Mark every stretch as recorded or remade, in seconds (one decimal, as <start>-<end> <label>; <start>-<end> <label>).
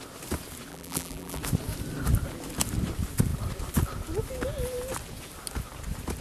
0.0-0.7 recorded; 0.7-1.4 remade; 1.4-6.2 recorded